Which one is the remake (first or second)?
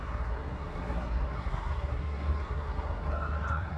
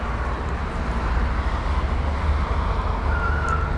first